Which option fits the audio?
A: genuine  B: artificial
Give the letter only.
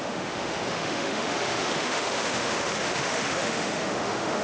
B